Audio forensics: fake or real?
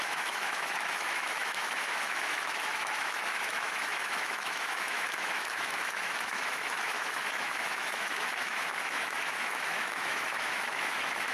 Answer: fake